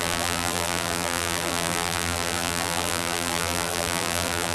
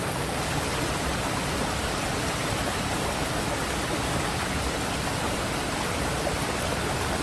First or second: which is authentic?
second